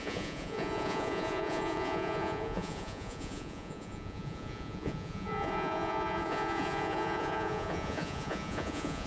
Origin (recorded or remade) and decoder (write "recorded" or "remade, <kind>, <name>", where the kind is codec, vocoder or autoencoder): remade, vocoder, Vocos